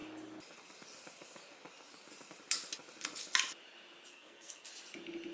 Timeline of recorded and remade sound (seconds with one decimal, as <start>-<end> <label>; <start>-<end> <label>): 0.0-4.1 recorded; 4.1-4.7 remade; 4.7-5.3 recorded